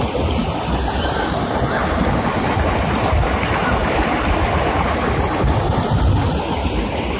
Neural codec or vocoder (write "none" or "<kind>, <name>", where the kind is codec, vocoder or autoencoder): none